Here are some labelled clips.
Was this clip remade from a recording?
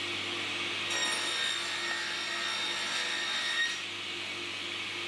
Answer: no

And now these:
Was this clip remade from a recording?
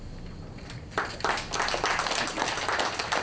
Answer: no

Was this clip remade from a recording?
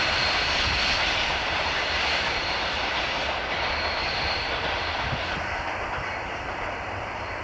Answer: yes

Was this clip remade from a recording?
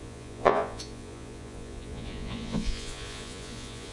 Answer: yes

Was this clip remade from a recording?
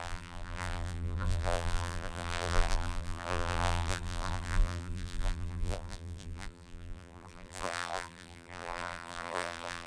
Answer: yes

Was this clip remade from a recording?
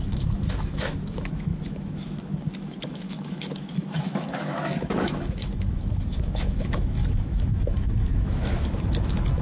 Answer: yes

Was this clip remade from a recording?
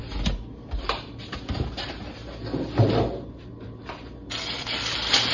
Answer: no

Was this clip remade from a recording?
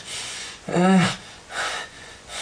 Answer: yes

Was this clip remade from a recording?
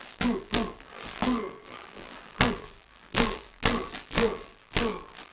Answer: yes